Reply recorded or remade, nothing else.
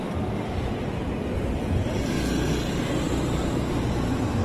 recorded